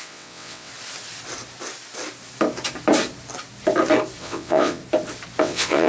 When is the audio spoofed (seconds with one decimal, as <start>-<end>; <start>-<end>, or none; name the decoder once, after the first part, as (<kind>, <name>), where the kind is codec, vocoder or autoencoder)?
0.0-0.7 (vocoder, WaveNeXt); 4.2-4.8; 5.4-5.9